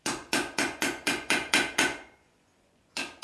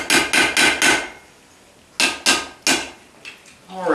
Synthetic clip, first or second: first